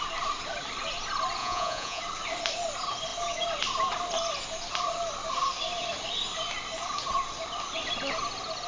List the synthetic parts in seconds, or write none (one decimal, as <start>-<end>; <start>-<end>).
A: 1.4-2.0